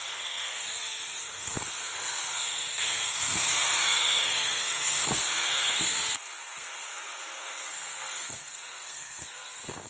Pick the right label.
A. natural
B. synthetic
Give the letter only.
B